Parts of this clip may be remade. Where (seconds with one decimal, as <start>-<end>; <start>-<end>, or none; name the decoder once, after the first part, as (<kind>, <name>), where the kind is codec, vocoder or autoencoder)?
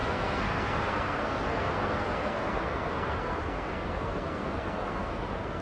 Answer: 0.0-5.6 (codec, SNAC)